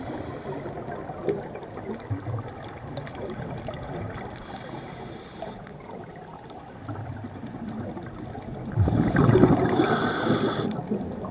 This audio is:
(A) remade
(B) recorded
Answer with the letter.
A